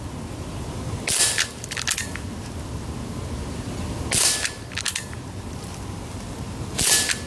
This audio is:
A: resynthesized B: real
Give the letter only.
B